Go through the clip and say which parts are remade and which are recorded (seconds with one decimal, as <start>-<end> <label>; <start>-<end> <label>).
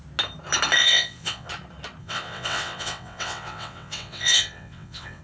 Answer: 0.0-0.8 recorded; 0.8-1.5 remade; 1.5-2.0 recorded; 2.0-5.2 remade